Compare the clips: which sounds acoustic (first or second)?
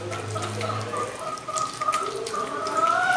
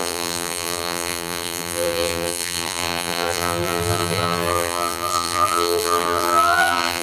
first